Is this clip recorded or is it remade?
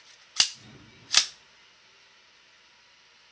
recorded